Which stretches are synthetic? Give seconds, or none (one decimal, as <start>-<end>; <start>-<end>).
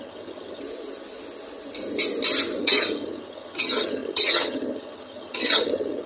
0.0-0.6; 2.6-6.1